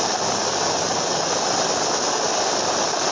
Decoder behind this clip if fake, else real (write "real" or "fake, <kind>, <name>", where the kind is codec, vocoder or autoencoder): real